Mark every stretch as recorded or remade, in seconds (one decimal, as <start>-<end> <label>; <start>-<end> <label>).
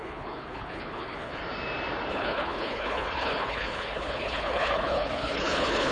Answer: 0.0-1.4 remade; 1.4-2.1 recorded; 2.1-5.9 remade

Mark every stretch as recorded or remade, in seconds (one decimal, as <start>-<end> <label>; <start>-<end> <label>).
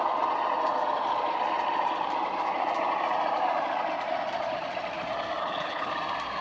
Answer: 0.0-5.4 recorded; 5.4-5.9 remade; 5.9-6.4 recorded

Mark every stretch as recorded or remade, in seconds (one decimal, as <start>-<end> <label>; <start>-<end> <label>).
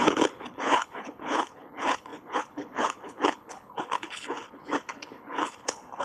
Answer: 0.0-6.0 remade